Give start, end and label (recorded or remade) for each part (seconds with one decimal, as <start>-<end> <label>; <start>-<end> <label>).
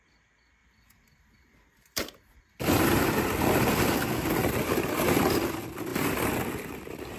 0.0-0.6 recorded; 0.6-2.4 remade; 2.4-4.4 recorded; 4.4-5.0 remade; 5.0-7.2 recorded